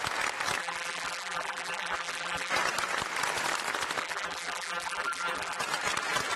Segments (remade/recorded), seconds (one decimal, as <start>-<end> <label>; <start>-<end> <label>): 0.0-0.6 recorded; 0.6-2.5 remade; 2.5-4.0 recorded; 4.0-5.6 remade; 5.6-6.4 recorded